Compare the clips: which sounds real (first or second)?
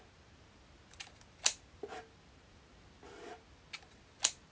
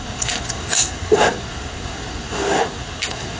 first